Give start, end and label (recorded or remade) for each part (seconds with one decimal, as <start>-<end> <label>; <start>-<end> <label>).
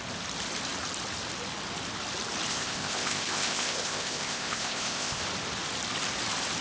0.0-2.5 recorded; 2.5-5.2 remade; 5.2-6.6 recorded